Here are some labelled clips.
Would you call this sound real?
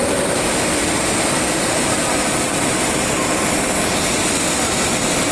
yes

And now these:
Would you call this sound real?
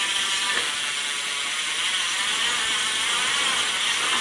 yes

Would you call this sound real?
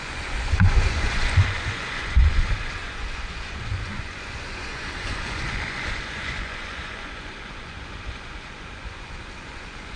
no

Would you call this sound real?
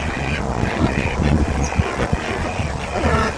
no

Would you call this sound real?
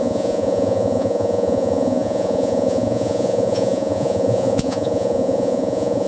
no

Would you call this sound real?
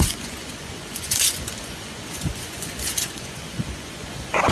no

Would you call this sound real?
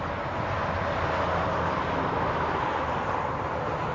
yes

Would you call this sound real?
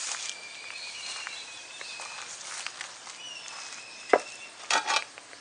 yes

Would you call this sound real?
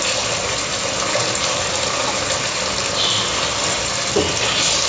yes